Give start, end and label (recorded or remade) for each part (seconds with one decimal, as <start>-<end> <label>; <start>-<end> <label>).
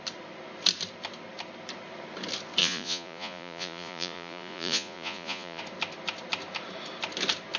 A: 0.0-2.6 recorded; 2.6-5.6 remade; 5.6-7.6 recorded